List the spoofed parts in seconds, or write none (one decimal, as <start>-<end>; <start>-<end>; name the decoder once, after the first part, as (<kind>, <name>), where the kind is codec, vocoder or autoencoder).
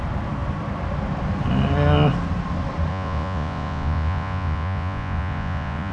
2.9-5.9 (vocoder, Vocos)